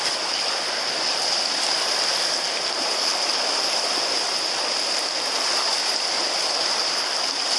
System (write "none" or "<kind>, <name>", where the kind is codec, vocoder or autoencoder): none